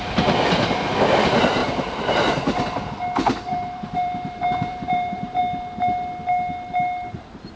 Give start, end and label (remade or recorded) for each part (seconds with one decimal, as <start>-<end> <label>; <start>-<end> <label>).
0.0-1.6 recorded; 1.6-2.2 remade; 2.2-3.5 recorded; 3.5-5.4 remade; 5.4-7.6 recorded